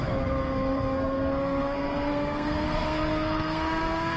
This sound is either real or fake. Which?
fake